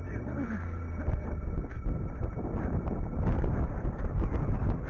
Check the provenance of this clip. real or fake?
real